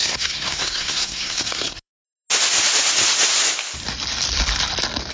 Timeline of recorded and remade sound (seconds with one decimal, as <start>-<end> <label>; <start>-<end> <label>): 0.0-1.9 remade; 1.9-5.1 recorded